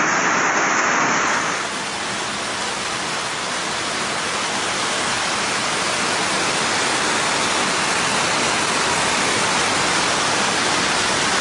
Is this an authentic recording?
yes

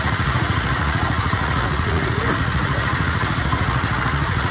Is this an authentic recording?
no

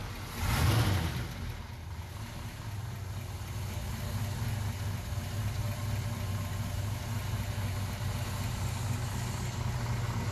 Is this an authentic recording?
yes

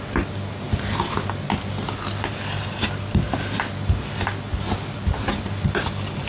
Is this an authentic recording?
yes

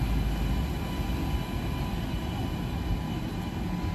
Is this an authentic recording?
yes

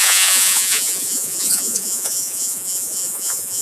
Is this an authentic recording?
no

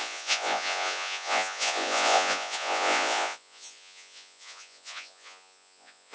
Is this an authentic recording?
no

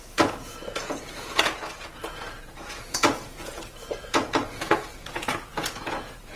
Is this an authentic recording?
no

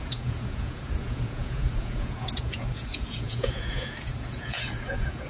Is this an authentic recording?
no